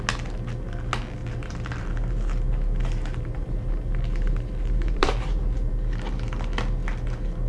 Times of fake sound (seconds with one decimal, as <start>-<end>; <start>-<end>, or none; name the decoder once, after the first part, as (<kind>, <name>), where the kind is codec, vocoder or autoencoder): 1.2-5.7 (vocoder, BigVGAN v2)